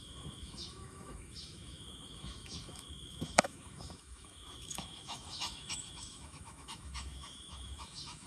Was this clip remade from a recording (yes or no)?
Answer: yes